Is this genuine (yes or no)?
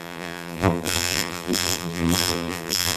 no